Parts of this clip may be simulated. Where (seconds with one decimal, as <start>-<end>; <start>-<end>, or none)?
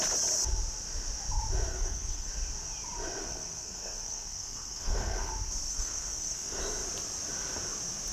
1.7-2.3; 3.2-5.3; 5.7-6.6